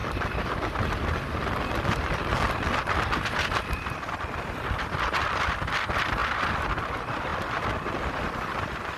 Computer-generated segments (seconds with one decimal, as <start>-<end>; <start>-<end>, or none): none